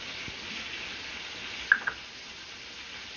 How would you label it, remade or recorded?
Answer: recorded